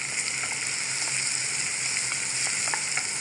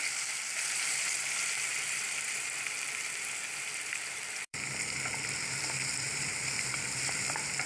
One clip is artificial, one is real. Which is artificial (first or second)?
second